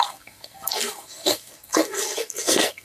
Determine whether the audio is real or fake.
fake